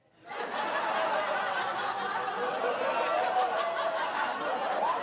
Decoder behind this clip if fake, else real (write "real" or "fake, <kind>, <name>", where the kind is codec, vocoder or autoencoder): real